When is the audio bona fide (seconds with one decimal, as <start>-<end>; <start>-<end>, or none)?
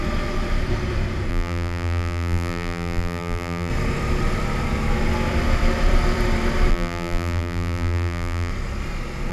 0.0-1.3; 3.7-6.7; 8.5-9.3